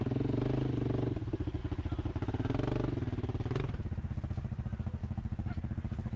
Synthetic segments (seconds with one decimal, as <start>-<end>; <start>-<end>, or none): none